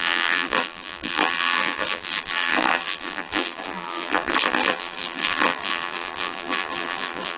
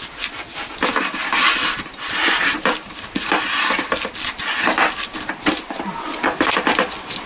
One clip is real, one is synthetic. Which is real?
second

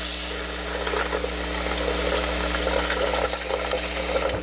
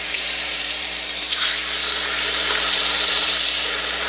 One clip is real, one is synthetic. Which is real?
first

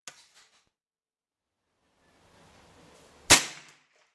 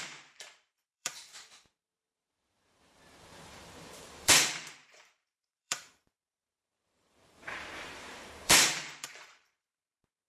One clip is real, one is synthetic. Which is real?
first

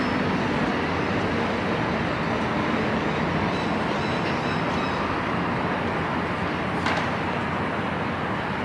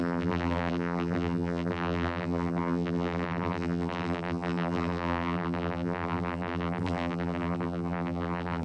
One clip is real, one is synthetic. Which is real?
first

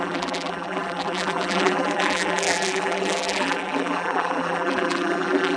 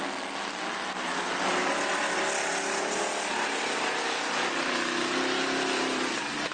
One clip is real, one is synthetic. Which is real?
second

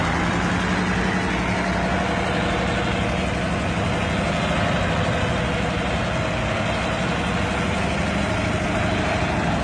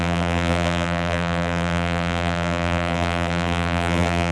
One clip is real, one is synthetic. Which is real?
first